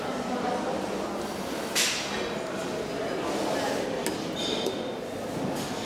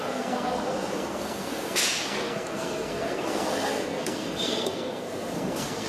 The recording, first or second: first